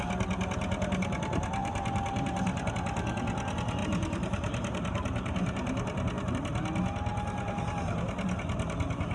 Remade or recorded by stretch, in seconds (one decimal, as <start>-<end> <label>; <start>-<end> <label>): 0.0-1.6 recorded; 1.6-2.7 remade; 2.7-3.8 recorded; 3.8-6.3 remade; 6.3-7.1 recorded; 7.1-7.6 remade; 7.6-9.1 recorded